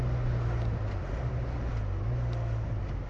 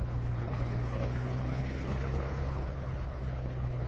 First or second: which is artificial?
second